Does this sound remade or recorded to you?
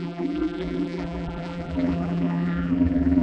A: remade